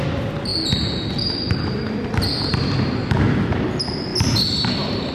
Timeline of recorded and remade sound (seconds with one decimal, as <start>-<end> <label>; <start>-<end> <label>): 0.0-5.1 recorded